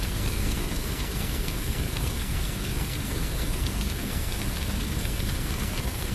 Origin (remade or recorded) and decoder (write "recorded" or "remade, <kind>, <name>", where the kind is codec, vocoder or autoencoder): remade, codec, SNAC